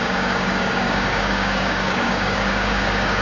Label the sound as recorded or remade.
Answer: remade